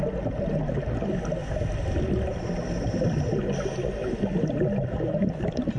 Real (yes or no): yes